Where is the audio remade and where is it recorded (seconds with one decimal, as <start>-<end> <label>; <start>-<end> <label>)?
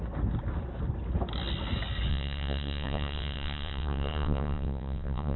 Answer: 0.0-2.1 recorded; 2.1-5.4 remade